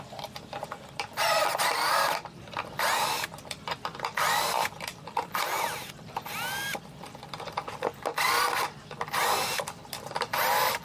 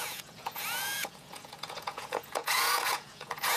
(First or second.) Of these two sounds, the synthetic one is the second